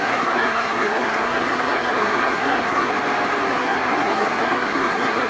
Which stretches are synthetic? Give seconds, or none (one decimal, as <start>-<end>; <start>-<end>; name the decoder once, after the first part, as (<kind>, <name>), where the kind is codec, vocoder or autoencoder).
0.0-2.9 (codec, SNAC); 3.5-5.3